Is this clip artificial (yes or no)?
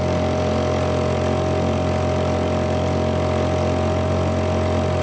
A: no